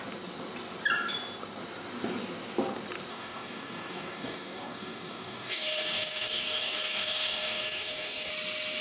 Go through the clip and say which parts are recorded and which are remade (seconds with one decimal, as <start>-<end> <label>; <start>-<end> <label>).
0.0-3.1 recorded; 3.1-8.3 remade; 8.3-8.8 recorded